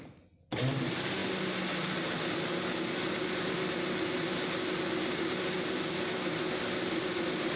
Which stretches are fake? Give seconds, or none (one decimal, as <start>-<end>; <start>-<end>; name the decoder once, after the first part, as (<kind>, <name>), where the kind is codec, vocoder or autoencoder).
none